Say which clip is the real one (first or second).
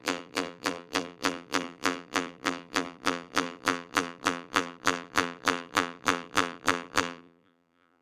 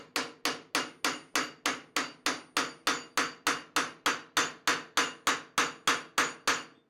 second